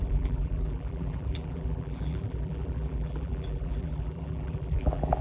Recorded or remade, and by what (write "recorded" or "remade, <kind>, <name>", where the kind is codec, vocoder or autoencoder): remade, vocoder, BigVGAN v2